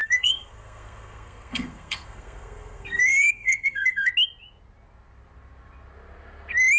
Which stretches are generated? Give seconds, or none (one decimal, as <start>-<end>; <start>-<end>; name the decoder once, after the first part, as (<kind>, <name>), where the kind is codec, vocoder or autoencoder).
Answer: 0.0-4.1 (codec, SNAC)